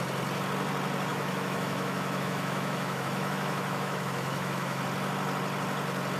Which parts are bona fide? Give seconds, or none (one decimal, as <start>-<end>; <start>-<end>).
0.0-1.1; 4.8-6.2